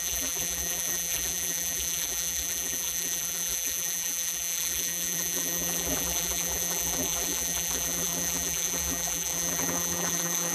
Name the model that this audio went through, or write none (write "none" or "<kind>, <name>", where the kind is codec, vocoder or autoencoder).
vocoder, BigVGAN v2